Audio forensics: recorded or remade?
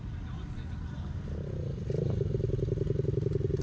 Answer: recorded